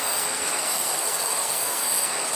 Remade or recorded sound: remade